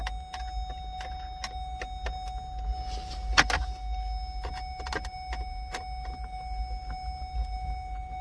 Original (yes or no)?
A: yes